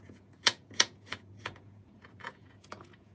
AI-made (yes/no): yes